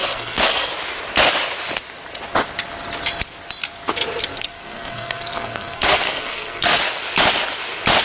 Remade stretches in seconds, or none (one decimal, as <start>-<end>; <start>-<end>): 0.0-0.7; 4.3-6.8